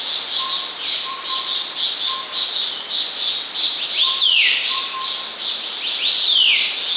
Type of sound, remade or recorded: recorded